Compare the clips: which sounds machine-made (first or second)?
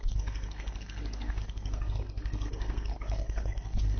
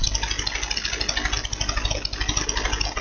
first